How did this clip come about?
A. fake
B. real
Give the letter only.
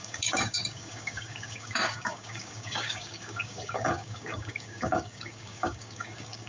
A